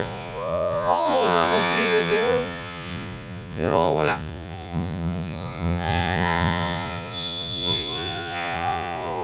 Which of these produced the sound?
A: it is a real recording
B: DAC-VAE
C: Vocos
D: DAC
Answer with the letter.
C